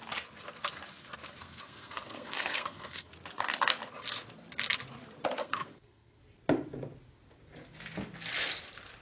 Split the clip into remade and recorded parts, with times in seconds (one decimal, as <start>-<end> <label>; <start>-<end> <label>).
0.0-1.4 recorded; 1.4-3.1 remade; 3.1-5.4 recorded; 5.4-6.2 remade; 6.2-9.0 recorded